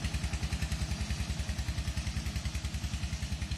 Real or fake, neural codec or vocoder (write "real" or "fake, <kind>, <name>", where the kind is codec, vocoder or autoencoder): real